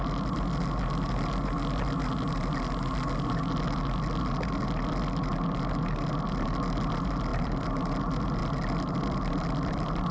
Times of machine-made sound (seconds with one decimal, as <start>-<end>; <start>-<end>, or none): 7.3-7.8; 8.4-10.1